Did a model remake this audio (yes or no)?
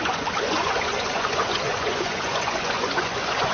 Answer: yes